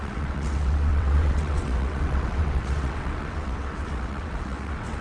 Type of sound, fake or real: fake